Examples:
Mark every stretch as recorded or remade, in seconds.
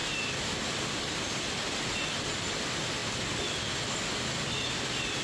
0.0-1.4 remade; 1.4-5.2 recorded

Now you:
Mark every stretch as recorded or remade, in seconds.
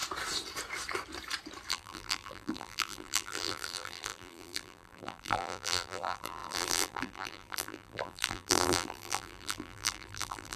0.0-1.7 recorded; 1.7-10.6 remade